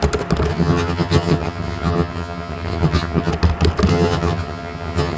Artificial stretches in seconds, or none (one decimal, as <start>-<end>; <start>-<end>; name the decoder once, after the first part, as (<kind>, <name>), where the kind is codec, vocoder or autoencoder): 0.5-3.3 (vocoder, HiFi-GAN); 3.9-5.2